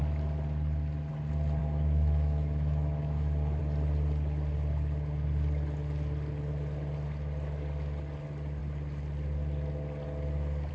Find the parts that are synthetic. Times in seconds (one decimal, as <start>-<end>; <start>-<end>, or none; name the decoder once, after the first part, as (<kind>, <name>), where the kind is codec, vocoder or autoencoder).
1.6-3.6 (autoencoder, DAC-VAE)